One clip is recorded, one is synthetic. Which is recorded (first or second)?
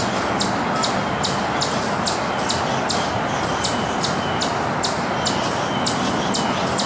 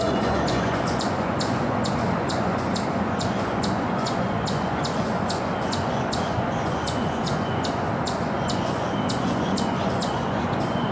first